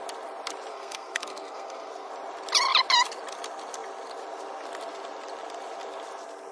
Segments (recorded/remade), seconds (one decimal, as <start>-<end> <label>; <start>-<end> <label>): 0.0-0.7 recorded; 0.7-2.1 remade; 2.1-6.5 recorded